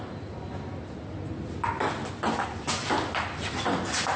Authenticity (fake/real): real